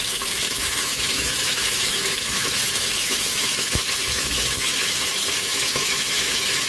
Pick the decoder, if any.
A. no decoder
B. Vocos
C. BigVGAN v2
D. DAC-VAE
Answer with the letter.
D